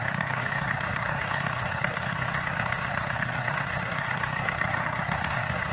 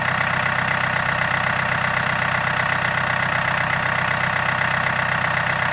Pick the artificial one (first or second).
first